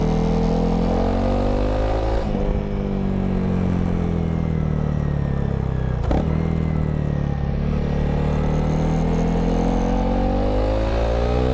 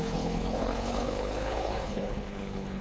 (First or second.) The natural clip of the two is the first